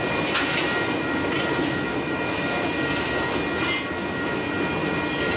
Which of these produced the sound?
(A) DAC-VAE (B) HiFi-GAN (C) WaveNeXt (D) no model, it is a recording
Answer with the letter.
D